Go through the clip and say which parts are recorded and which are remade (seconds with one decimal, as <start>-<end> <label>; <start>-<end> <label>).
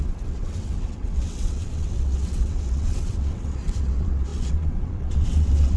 0.0-5.8 remade